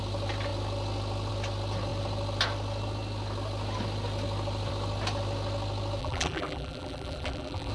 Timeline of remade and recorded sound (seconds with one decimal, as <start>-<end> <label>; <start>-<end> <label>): 0.0-6.0 recorded; 6.0-7.7 remade